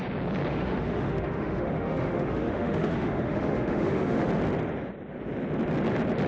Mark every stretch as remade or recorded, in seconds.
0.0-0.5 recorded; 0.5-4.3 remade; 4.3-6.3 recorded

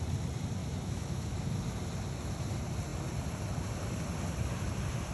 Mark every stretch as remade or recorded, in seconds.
0.0-0.6 recorded; 0.6-1.6 remade; 1.6-5.1 recorded

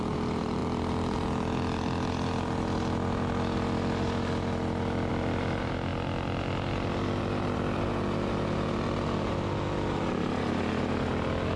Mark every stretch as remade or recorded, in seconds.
0.0-11.6 recorded

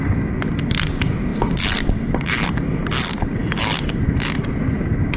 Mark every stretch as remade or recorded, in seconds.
0.0-5.2 recorded

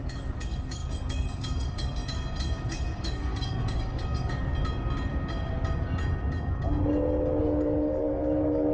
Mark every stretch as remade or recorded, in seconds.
0.0-2.0 remade; 2.0-2.6 recorded; 2.6-4.5 remade; 4.5-7.4 recorded; 7.4-8.7 remade

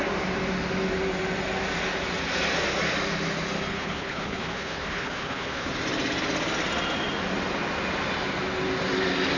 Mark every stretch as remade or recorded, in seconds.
0.0-3.7 recorded; 3.7-5.7 remade; 5.7-9.4 recorded

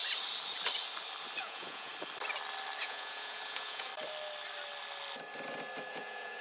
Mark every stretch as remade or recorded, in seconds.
0.0-1.4 recorded; 1.4-1.9 remade; 1.9-2.8 recorded; 2.8-3.9 remade; 3.9-5.9 recorded; 5.9-6.4 remade

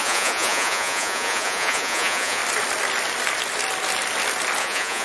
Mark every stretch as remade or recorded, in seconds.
0.0-2.4 remade; 2.4-4.6 recorded; 4.6-5.0 remade